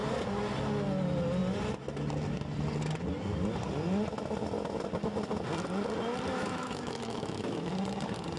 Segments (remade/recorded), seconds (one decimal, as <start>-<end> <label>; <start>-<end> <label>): 0.0-6.3 recorded; 6.3-7.7 remade; 7.7-8.4 recorded